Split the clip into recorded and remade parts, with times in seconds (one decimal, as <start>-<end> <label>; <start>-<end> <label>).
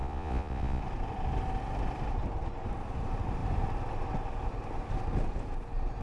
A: 0.0-0.8 remade; 0.8-6.0 recorded